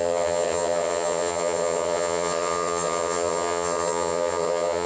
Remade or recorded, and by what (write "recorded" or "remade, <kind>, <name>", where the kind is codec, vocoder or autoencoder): remade, vocoder, HiFi-GAN